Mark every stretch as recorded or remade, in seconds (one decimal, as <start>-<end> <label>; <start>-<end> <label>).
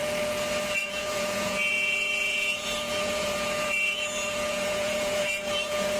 0.0-0.8 recorded; 0.8-6.0 remade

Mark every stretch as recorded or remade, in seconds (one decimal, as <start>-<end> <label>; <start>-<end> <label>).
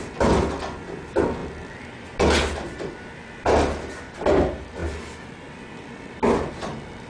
0.0-7.1 recorded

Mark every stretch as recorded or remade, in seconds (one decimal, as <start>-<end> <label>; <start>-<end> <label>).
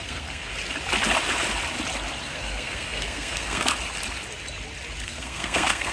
0.0-0.5 remade; 0.5-2.2 recorded; 2.2-3.7 remade; 3.7-5.0 recorded; 5.0-5.9 remade